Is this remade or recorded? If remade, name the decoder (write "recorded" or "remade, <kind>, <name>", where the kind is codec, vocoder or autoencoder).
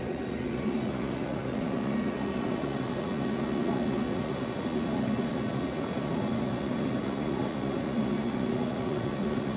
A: remade, vocoder, Vocos